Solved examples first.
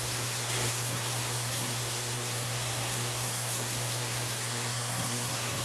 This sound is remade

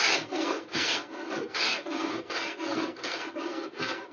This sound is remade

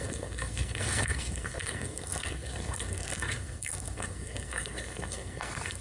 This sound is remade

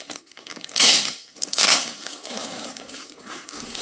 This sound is remade